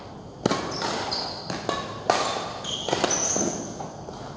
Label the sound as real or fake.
real